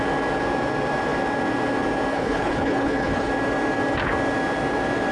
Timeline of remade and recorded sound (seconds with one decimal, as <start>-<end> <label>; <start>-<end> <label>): 0.0-2.1 recorded; 2.1-3.3 remade; 3.3-5.1 recorded